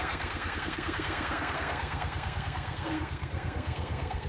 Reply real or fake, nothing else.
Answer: fake